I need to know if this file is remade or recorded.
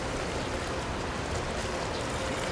recorded